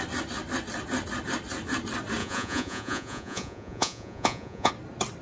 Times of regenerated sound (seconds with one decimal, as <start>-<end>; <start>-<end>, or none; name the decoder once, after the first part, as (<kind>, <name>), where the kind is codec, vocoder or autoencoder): 2.2-4.7 (vocoder, Vocos)